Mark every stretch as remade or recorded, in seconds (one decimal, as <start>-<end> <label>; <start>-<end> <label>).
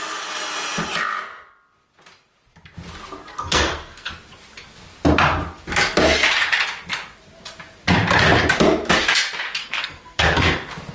0.0-3.3 recorded; 3.3-4.1 remade; 4.1-9.6 recorded; 9.6-10.5 remade; 10.5-10.9 recorded